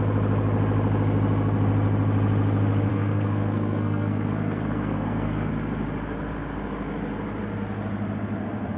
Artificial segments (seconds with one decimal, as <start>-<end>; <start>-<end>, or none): 2.9-5.5

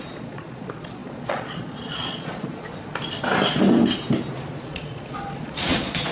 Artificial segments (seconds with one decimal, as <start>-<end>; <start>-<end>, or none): 0.0-2.7; 4.6-6.1

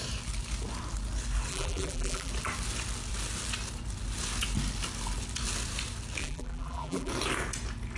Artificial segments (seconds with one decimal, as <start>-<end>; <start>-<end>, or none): 1.5-2.3; 6.2-7.1

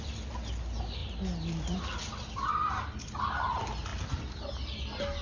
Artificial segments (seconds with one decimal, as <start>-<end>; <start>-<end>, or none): none